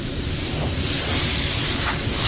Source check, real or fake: fake